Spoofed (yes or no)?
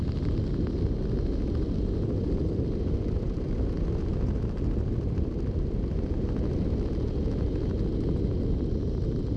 no